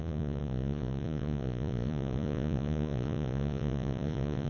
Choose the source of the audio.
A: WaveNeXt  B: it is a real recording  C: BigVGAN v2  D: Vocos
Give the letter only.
D